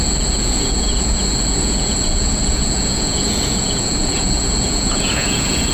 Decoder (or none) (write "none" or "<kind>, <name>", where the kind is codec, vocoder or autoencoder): vocoder, Vocos